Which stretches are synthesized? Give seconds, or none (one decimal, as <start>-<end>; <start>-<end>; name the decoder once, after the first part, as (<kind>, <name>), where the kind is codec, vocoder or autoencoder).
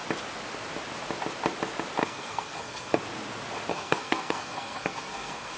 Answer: 2.0-3.0 (codec, SNAC); 3.7-5.6